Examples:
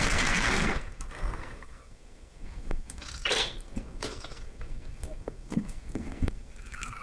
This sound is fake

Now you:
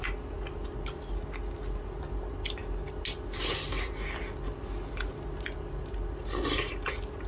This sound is real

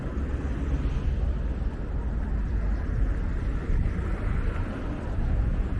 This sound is real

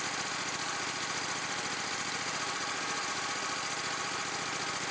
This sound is real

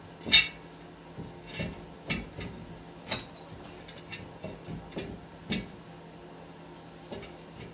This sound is real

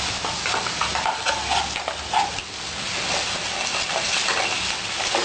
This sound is real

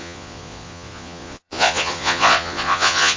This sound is fake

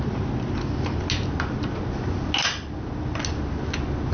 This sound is real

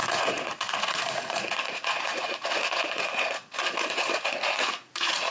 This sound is fake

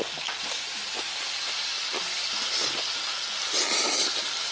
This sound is real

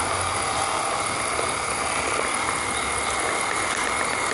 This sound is real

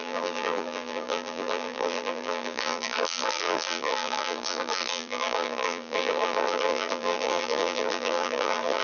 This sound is fake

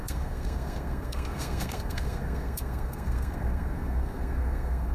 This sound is fake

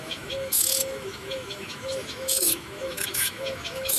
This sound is fake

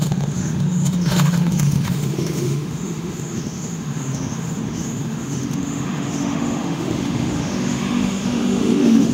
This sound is fake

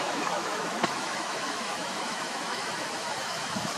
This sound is fake